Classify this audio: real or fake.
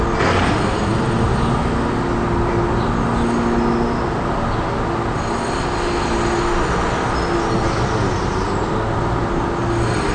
real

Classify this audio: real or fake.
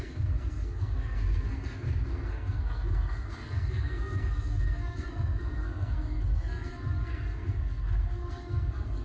fake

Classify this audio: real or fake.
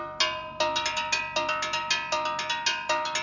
real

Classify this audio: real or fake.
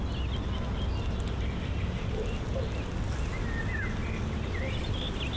real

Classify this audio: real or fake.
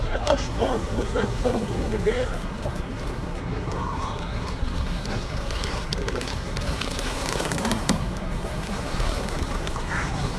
fake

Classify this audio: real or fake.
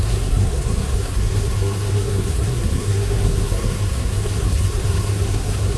fake